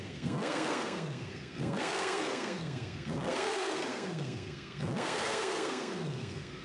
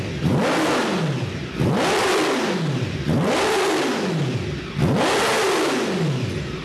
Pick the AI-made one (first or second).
first